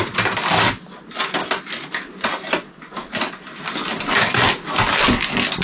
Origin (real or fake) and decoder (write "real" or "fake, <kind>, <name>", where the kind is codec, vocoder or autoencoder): real